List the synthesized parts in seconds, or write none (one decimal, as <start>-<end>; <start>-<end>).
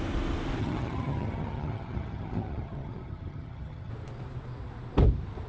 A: 0.6-3.9